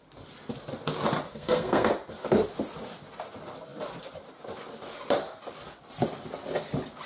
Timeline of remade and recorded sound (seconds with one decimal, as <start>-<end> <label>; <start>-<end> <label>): 0.0-1.3 recorded; 1.3-1.9 remade; 1.9-7.1 recorded